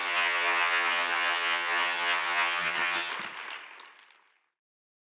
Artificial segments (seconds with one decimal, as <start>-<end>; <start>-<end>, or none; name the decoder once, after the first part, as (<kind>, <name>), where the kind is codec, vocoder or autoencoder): 0.0-3.1 (vocoder, HiFi-GAN)